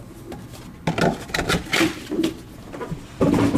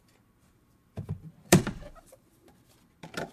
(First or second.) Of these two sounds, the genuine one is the first